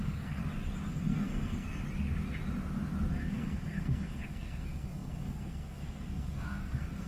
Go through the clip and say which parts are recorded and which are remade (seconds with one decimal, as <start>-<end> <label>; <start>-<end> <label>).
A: 0.0-0.4 remade; 0.4-0.9 recorded; 0.9-1.8 remade; 1.8-3.1 recorded; 3.1-7.1 remade